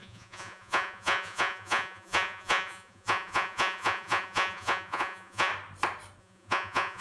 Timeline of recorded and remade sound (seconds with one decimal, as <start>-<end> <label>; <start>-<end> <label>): 0.0-5.5 remade; 5.5-6.2 recorded; 6.2-7.0 remade